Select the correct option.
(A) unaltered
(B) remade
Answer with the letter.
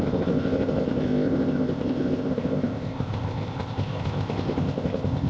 B